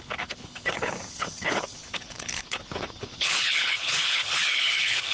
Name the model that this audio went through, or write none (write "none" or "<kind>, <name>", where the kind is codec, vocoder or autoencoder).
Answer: codec, HILCodec